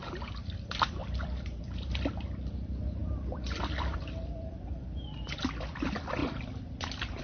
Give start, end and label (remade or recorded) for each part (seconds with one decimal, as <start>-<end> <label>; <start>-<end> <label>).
0.0-1.0 recorded; 1.0-1.6 remade; 1.6-3.0 recorded; 3.0-4.0 remade; 4.0-6.2 recorded; 6.2-7.2 remade

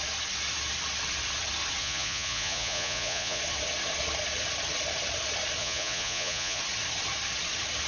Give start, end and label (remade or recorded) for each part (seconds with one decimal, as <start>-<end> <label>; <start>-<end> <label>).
0.0-1.8 recorded; 1.8-3.4 remade; 3.4-5.6 recorded; 5.6-6.6 remade; 6.6-7.9 recorded

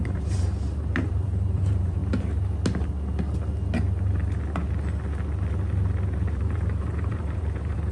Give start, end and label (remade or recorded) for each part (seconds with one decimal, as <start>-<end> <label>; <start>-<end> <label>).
0.0-2.0 remade; 2.0-6.3 recorded; 6.3-7.9 remade

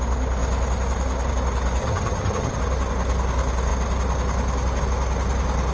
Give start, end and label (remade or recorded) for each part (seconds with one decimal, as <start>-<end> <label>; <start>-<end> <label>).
0.0-1.8 recorded; 1.8-2.6 remade; 2.6-5.7 recorded

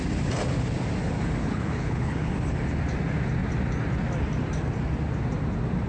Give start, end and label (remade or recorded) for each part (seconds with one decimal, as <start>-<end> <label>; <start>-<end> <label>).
0.0-1.4 recorded; 1.4-2.3 remade; 2.3-5.9 recorded

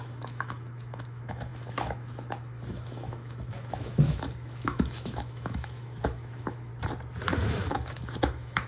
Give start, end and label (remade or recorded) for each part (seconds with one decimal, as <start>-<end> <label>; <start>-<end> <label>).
0.0-6.7 remade; 6.7-7.5 recorded; 7.5-8.7 remade

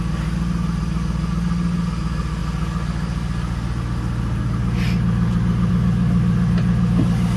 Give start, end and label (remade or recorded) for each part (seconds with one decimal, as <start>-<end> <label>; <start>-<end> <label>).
0.0-7.4 recorded